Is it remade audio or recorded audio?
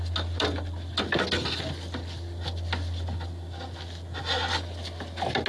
recorded